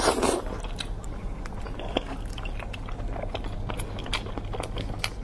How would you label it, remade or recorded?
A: recorded